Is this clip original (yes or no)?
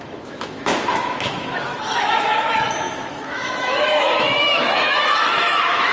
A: no